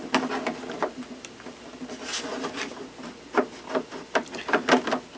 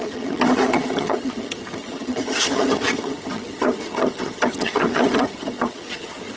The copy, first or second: second